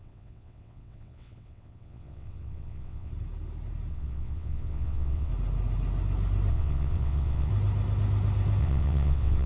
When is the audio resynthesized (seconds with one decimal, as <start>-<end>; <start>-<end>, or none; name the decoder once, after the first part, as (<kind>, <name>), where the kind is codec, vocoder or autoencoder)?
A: 0.0-3.1 (vocoder, WaveNeXt); 3.9-5.3; 6.5-7.5; 8.6-9.5